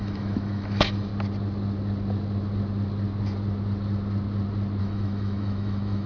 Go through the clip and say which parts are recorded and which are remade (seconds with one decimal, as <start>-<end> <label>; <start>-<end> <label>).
0.0-1.1 remade; 1.1-4.8 recorded; 4.8-6.1 remade